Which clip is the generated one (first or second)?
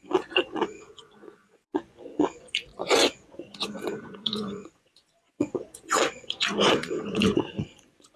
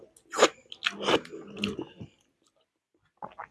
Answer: first